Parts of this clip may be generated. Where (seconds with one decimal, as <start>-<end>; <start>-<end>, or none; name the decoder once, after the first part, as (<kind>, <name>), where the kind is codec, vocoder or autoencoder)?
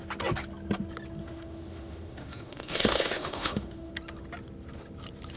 1.2-3.9 (autoencoder, DAC-VAE)